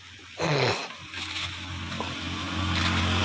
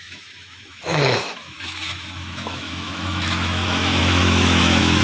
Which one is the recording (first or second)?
first